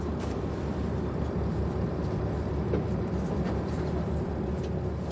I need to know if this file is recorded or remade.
remade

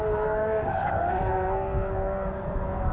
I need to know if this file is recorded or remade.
remade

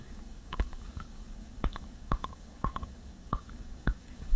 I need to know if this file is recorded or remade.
remade